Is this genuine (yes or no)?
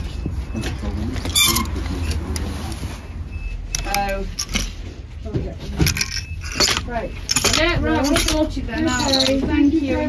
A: yes